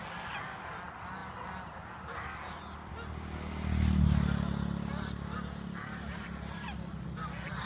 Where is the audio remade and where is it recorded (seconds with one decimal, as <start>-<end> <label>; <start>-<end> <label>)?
0.0-7.7 recorded